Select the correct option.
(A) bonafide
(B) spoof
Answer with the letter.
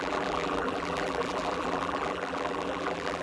B